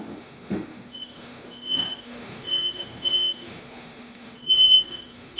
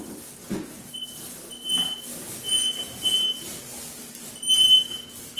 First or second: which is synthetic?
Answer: first